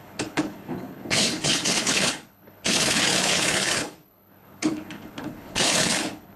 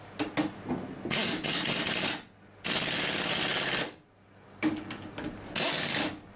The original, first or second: second